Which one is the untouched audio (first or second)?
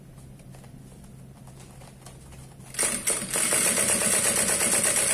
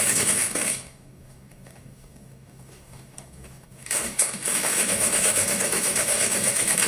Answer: first